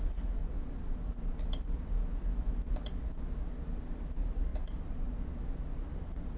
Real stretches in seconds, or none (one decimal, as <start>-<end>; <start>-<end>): 0.0-0.4; 1.4-4.5; 5.2-6.4